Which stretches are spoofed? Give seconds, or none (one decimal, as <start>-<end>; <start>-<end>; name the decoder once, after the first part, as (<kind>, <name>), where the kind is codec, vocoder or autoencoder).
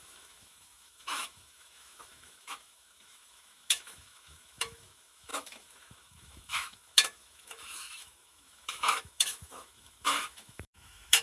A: 0.0-11.2 (autoencoder, DAC-VAE)